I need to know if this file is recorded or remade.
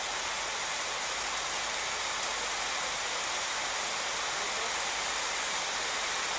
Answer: recorded